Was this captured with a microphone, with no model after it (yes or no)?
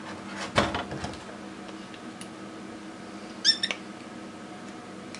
yes